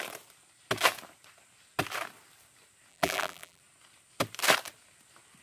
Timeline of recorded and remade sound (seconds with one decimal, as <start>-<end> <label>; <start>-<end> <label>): 0.0-2.9 recorded; 2.9-3.6 remade; 3.6-5.4 recorded